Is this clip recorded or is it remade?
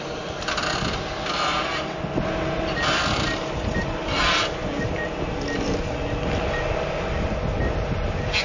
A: recorded